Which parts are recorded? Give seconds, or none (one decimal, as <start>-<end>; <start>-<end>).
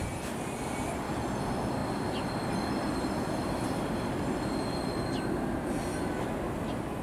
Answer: 0.0-7.0